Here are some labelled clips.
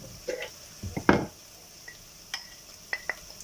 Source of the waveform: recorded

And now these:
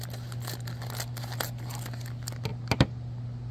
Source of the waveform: recorded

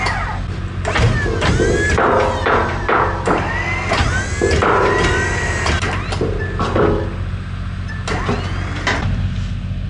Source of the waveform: recorded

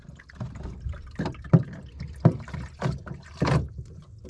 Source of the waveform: recorded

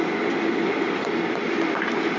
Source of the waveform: recorded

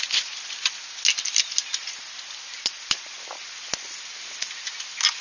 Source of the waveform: recorded